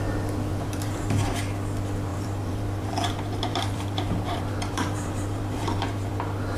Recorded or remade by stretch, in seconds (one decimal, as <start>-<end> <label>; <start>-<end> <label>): 0.0-0.5 recorded; 0.5-1.5 remade; 1.5-2.1 recorded; 2.1-6.1 remade; 6.1-6.6 recorded